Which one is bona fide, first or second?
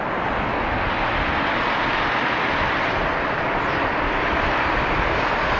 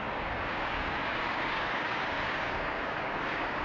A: first